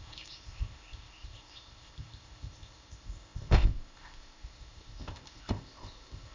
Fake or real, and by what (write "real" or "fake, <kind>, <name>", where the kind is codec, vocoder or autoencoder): fake, codec, ZipCodec